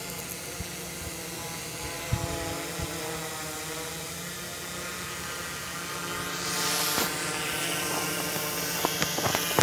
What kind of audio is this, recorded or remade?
recorded